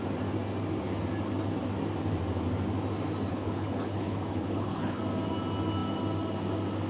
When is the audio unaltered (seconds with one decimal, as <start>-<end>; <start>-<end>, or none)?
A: 0.0-3.3; 5.0-6.9